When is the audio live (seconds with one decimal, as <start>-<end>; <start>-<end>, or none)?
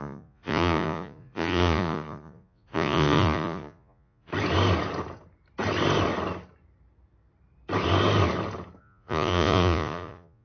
4.3-8.8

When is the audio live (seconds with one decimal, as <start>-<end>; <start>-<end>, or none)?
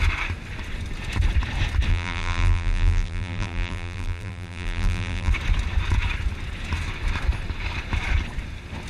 0.0-1.9; 5.3-8.9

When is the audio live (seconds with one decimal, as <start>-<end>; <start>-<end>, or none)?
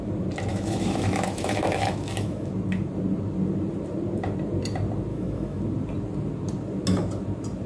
0.0-0.5; 2.5-5.1; 5.6-7.7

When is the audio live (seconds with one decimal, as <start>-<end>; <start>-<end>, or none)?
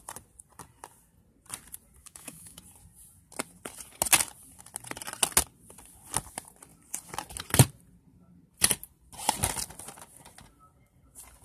0.0-2.0; 2.6-11.4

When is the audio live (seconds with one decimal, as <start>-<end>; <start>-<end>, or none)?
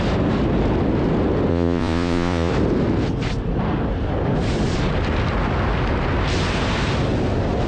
0.0-1.5; 2.5-7.7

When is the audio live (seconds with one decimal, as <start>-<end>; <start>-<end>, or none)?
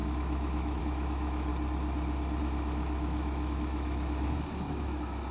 1.5-2.4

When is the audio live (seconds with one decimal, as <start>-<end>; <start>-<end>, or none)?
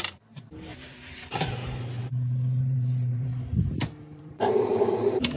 3.3-4.2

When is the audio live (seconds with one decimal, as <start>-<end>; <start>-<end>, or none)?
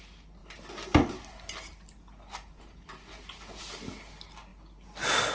0.0-5.3